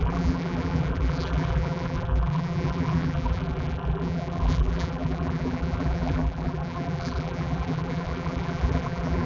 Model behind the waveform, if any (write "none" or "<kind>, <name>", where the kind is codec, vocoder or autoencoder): vocoder, BigVGAN v2